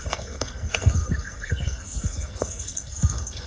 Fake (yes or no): yes